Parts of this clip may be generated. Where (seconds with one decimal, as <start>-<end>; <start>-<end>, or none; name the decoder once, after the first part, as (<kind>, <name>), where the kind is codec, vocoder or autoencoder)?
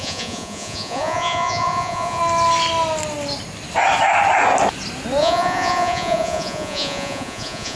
0.0-2.2 (vocoder, Vocos); 5.2-7.8